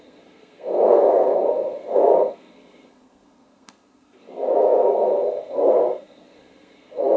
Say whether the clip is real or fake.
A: fake